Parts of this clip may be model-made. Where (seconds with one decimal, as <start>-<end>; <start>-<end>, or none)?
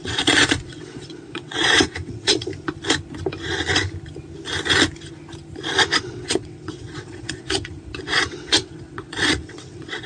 0.0-2.5; 6.0-10.1